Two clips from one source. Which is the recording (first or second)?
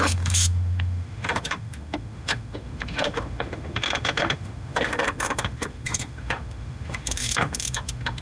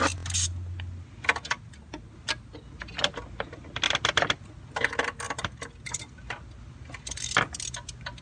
second